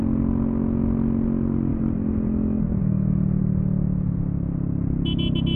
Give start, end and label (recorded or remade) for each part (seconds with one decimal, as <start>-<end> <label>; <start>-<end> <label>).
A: 0.0-5.6 recorded